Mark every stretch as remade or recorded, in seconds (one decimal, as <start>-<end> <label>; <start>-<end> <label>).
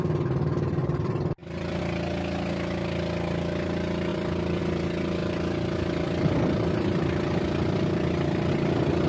0.0-0.8 recorded; 0.8-1.8 remade; 1.8-4.1 recorded; 4.1-4.6 remade; 4.6-5.2 recorded; 5.2-8.5 remade; 8.5-9.1 recorded